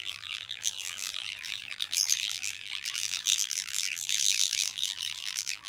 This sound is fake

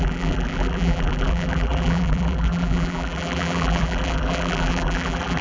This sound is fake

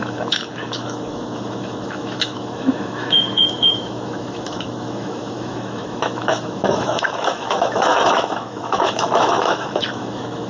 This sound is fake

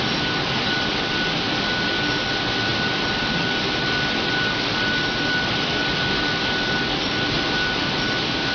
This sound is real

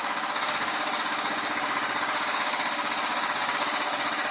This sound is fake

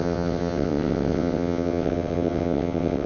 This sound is fake